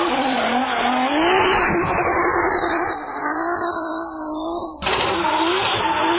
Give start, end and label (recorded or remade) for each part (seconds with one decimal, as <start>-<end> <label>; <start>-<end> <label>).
0.0-6.2 recorded